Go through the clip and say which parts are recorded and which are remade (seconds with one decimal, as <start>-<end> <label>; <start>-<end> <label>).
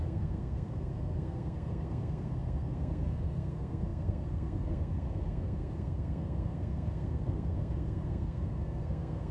0.0-9.3 remade